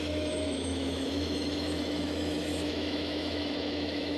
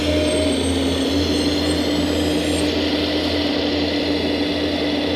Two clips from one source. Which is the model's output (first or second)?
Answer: first